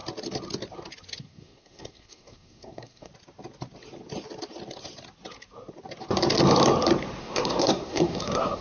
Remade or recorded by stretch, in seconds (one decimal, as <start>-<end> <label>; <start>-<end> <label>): 0.0-1.2 recorded; 1.2-3.1 remade; 3.1-7.2 recorded; 7.2-8.6 remade